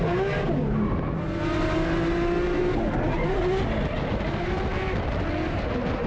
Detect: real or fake real